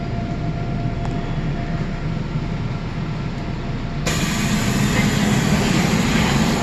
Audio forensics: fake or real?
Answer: real